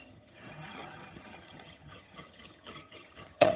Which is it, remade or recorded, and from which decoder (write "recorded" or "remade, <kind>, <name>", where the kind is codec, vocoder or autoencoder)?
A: remade, vocoder, HiFi-GAN